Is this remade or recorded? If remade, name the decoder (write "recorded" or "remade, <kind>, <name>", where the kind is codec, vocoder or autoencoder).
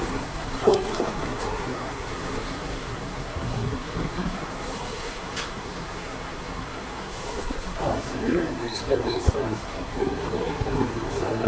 remade, codec, SNAC